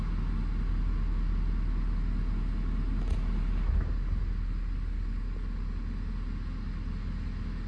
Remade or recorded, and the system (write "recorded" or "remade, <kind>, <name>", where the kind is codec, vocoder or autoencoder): recorded